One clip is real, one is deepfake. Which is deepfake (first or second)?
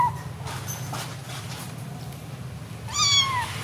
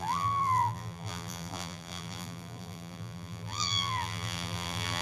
second